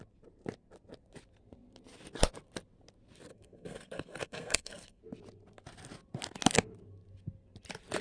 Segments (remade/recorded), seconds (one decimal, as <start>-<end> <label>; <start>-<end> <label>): 0.0-3.3 recorded; 3.3-5.0 remade; 5.0-8.0 recorded